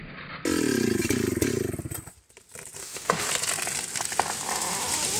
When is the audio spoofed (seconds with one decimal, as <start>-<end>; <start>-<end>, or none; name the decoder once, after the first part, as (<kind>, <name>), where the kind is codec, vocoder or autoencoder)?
2.8-3.3 (autoencoder, DAC-VAE)